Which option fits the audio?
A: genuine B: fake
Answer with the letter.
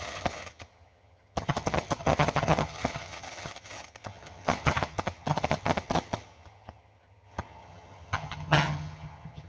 B